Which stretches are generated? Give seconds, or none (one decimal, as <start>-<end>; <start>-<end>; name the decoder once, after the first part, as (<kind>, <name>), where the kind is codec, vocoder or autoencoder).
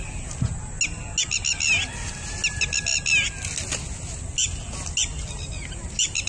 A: none